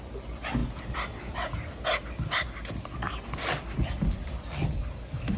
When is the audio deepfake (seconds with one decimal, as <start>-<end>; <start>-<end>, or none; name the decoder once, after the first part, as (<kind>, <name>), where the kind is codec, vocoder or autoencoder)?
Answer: none